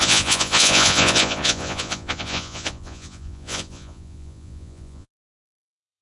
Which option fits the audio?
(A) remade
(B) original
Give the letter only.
A